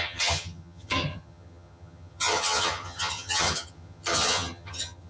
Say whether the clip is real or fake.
fake